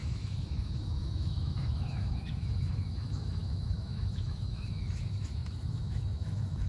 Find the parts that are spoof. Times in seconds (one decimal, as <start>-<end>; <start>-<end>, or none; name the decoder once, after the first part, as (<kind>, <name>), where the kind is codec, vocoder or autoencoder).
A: 0.0-6.7 (autoencoder, DAC-VAE)